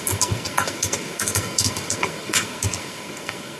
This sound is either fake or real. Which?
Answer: fake